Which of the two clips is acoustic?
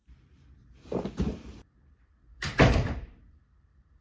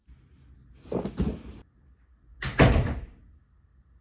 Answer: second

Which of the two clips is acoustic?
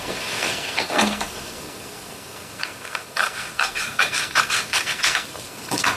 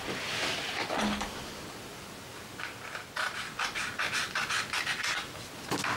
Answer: second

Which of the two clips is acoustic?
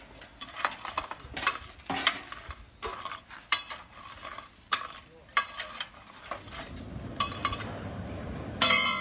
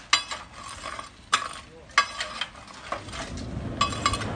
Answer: second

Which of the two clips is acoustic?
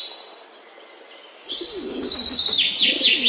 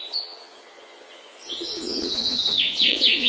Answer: first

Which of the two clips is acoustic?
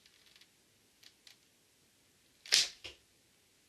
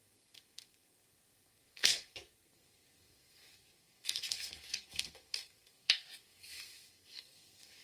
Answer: first